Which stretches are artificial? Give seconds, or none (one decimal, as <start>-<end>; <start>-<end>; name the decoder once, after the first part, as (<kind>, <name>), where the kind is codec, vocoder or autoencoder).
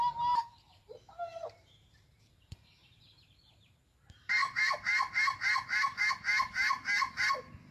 0.0-7.7 (vocoder, BigVGAN v2)